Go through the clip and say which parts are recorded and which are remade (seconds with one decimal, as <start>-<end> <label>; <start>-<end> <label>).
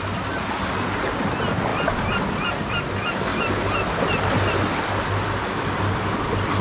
0.0-6.6 recorded